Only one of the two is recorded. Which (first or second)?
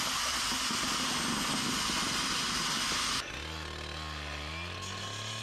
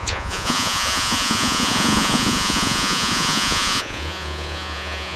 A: first